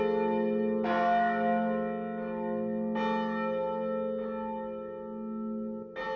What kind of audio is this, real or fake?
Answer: real